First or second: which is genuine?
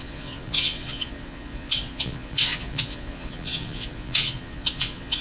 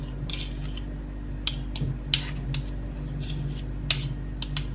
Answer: second